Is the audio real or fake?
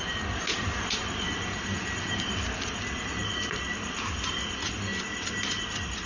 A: real